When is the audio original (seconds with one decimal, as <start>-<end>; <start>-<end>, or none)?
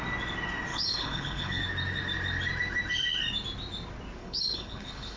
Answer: 0.0-0.7; 1.6-4.2